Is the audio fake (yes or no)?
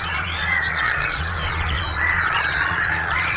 yes